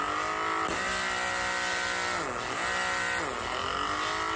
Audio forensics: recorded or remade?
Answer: recorded